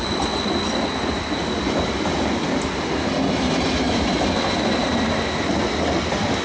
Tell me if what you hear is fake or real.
real